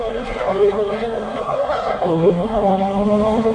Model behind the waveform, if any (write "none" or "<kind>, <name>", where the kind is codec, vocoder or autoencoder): codec, SNAC